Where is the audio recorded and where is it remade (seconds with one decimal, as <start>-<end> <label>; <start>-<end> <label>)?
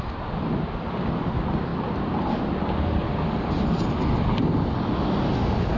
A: 0.0-5.8 recorded